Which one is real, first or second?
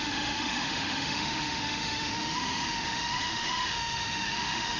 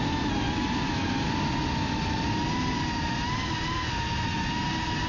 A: second